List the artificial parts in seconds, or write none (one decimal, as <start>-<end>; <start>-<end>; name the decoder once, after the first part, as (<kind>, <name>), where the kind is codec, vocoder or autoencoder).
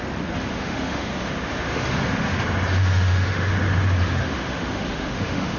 0.5-2.4 (autoencoder, DAC-VAE); 2.8-3.5; 4.2-5.6